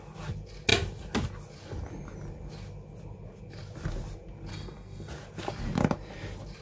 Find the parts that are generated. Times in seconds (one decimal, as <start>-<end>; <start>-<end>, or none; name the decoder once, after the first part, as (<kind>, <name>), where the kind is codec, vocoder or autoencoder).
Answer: 4.5-5.1 (codec, SNAC)